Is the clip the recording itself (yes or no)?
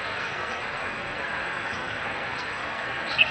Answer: no